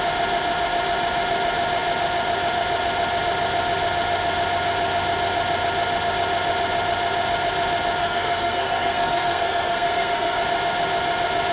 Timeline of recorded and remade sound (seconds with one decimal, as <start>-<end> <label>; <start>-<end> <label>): 0.0-8.0 recorded; 8.0-10.4 remade; 10.4-11.5 recorded